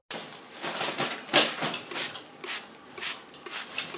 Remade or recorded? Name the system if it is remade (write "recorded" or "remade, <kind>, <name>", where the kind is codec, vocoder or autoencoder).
recorded